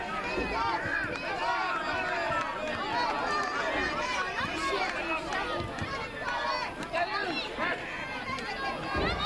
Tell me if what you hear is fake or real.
real